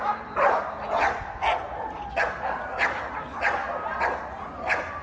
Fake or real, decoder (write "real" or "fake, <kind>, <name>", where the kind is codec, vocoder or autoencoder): real